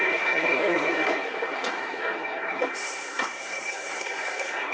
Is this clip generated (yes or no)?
yes